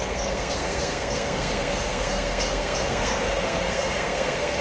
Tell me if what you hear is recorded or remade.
remade